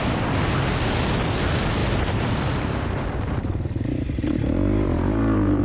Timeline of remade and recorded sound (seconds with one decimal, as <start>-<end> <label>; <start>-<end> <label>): 0.0-1.8 recorded; 1.8-5.6 remade